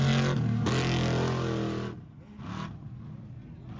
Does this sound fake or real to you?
real